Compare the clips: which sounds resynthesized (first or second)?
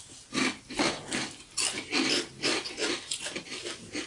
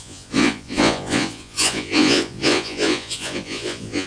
second